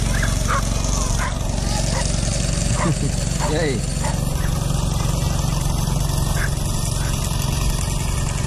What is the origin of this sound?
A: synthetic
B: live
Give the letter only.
B